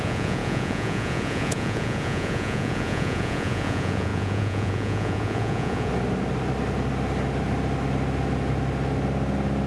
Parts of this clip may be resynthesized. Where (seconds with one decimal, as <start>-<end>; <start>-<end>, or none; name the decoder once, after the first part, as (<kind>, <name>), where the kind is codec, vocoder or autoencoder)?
0.0-5.9 (vocoder, Vocos)